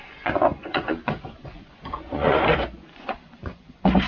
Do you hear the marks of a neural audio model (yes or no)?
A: yes